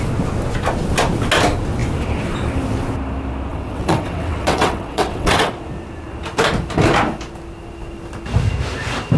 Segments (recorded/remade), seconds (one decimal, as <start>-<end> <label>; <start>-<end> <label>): 0.0-3.5 recorded; 3.5-5.5 remade; 5.5-9.2 recorded